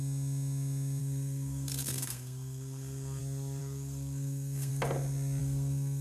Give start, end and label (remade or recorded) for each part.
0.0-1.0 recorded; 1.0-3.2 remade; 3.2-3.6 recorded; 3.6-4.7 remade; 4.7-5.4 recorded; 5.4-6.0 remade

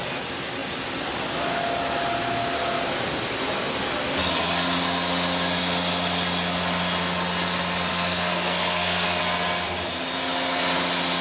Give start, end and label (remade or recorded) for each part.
0.0-7.9 recorded; 7.9-9.2 remade; 9.2-11.2 recorded

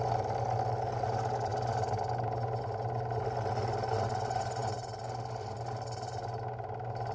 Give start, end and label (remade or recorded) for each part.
0.0-7.1 recorded

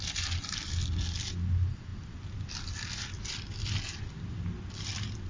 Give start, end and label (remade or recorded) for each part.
0.0-5.3 recorded

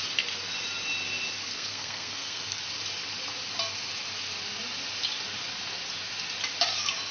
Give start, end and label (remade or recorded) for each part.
0.0-1.5 recorded; 1.5-2.6 remade; 2.6-7.1 recorded

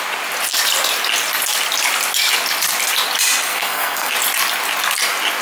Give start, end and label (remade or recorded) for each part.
0.0-3.5 recorded; 3.5-4.1 remade; 4.1-5.4 recorded

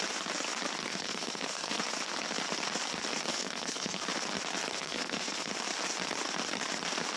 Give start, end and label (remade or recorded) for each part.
0.0-0.9 recorded; 0.9-1.8 remade; 1.8-3.3 recorded; 3.3-4.0 remade; 4.0-4.7 recorded; 4.7-5.5 remade; 5.5-7.2 recorded

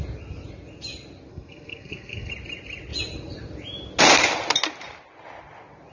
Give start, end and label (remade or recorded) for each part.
0.0-1.3 recorded; 1.3-2.3 remade; 2.3-5.9 recorded